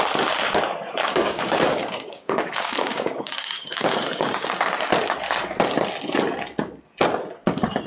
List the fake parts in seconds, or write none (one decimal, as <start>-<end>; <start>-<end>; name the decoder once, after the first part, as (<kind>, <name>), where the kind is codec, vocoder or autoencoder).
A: 1.0-4.0 (codec, DAC)